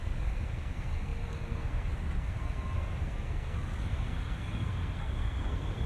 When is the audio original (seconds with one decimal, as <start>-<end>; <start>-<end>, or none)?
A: none